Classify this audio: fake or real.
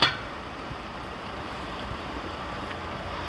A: fake